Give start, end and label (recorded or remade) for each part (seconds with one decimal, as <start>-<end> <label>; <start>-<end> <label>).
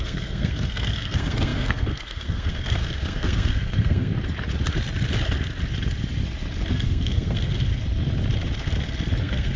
0.0-4.1 remade; 4.1-6.7 recorded; 6.7-7.7 remade; 7.7-9.2 recorded; 9.2-9.6 remade